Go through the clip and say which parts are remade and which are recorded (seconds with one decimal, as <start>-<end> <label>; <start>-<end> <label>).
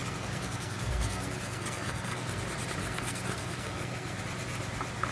0.0-2.4 remade; 2.4-2.8 recorded; 2.8-4.2 remade; 4.2-5.1 recorded